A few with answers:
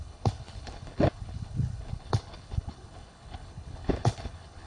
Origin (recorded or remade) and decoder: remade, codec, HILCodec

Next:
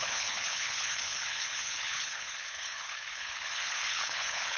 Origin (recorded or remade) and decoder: remade, codec, HILCodec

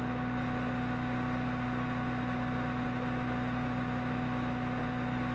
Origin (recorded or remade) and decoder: recorded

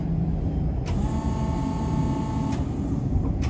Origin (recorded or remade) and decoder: recorded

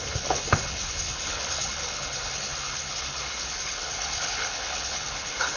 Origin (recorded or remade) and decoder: remade, codec, HILCodec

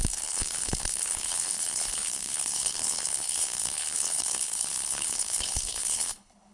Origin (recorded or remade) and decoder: remade, codec, HILCodec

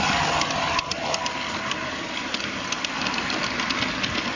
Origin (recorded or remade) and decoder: recorded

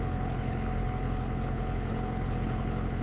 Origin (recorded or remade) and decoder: remade, codec, HILCodec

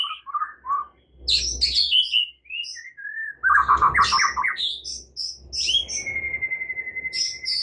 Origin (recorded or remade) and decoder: recorded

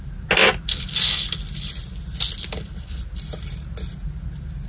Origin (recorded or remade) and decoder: recorded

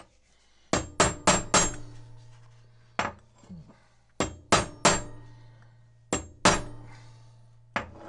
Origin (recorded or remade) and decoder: recorded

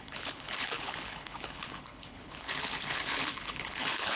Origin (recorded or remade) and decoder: remade, codec, HILCodec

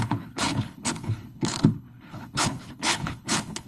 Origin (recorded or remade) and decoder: remade, codec, HILCodec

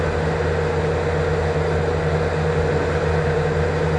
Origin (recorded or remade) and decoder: recorded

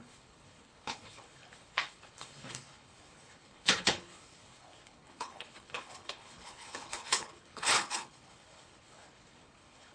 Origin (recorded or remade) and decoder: remade, codec, HILCodec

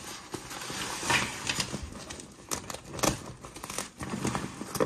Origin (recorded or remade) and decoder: recorded